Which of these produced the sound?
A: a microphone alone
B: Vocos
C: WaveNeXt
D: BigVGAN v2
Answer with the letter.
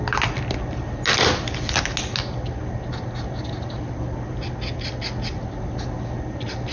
A